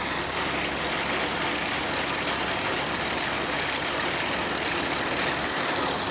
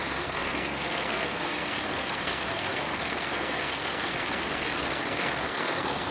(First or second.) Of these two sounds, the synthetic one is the second